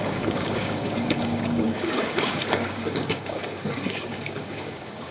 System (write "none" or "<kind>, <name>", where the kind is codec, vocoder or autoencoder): codec, DAC